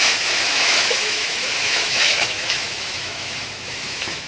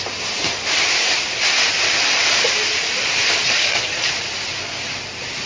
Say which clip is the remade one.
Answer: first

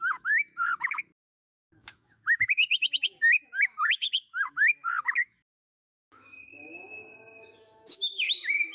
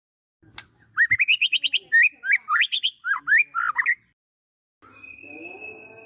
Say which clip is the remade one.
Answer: first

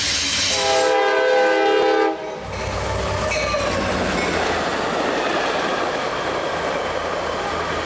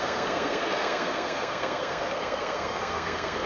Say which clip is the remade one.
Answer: second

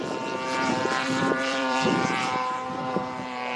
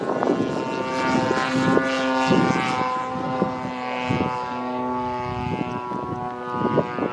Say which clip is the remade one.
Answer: first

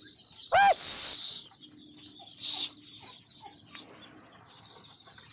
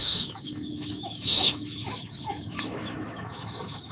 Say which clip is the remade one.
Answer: second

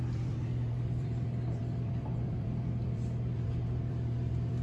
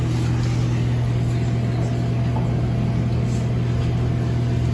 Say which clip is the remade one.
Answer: first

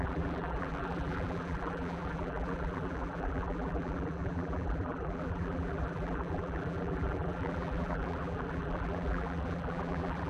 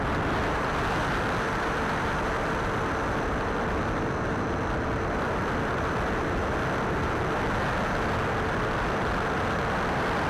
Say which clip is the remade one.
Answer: first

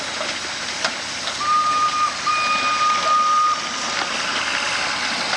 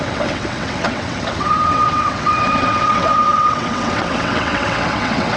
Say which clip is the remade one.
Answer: second